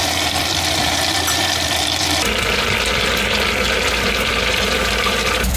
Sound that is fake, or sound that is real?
fake